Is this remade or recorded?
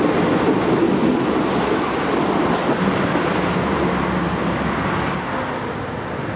recorded